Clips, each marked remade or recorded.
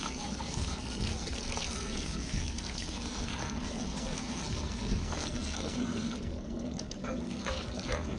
remade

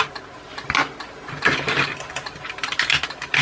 recorded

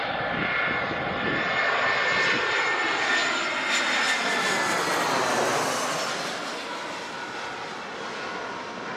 recorded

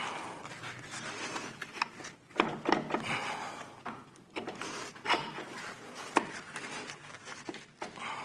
recorded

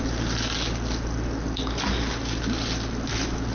recorded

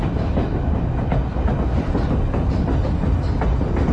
recorded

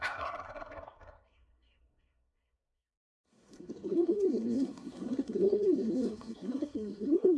remade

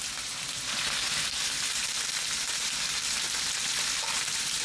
recorded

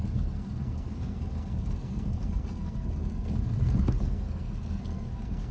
remade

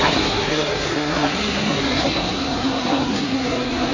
remade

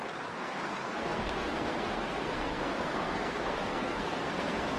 remade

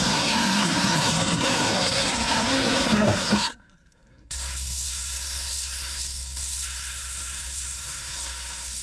remade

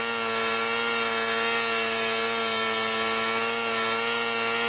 recorded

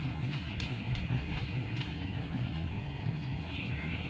remade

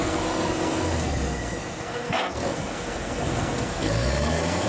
remade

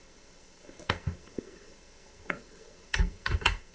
remade